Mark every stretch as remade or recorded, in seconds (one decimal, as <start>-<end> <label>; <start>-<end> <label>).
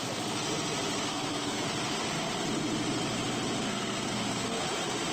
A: 0.0-1.1 recorded; 1.1-1.6 remade; 1.6-3.7 recorded; 3.7-4.6 remade; 4.6-5.1 recorded